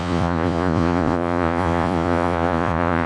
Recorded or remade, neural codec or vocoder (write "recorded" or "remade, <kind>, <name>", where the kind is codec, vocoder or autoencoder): remade, vocoder, Vocos